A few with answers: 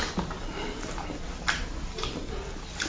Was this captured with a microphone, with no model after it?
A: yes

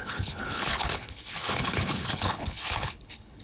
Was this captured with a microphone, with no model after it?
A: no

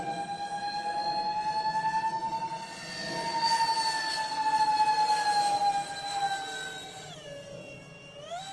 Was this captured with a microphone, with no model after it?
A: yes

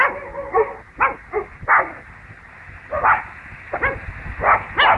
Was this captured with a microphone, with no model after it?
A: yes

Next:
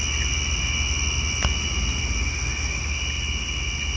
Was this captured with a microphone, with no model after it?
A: yes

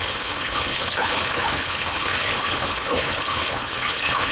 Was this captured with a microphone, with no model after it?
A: no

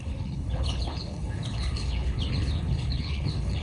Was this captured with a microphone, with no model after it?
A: no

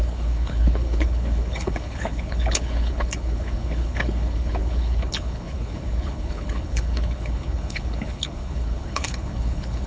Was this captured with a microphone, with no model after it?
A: no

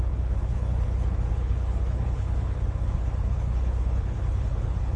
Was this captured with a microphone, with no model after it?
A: no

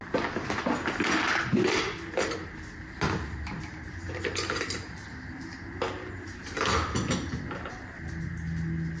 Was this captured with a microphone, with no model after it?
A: yes